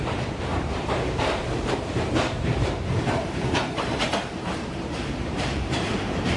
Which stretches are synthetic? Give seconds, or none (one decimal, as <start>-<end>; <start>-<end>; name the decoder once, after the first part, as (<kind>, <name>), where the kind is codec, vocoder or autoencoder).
0.0-4.0 (vocoder, BigVGAN v2); 4.5-6.4